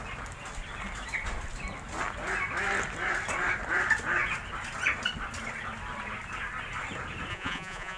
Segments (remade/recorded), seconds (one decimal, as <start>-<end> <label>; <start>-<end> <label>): 0.0-7.3 recorded; 7.3-8.0 remade